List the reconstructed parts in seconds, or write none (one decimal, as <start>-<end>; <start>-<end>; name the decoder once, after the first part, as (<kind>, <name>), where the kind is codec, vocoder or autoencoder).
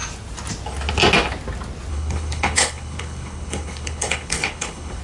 1.9-5.0 (codec, HILCodec)